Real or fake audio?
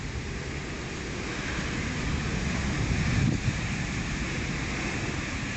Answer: real